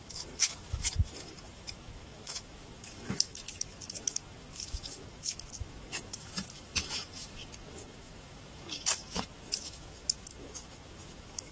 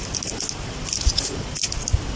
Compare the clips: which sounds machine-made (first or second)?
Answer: first